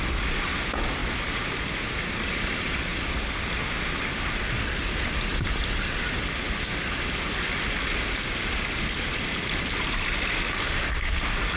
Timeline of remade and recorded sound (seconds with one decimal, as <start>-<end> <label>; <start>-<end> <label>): 0.0-11.6 recorded